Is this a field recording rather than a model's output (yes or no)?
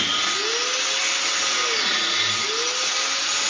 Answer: yes